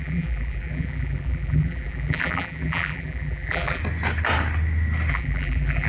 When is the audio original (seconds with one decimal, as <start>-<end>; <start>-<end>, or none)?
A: 3.8-5.1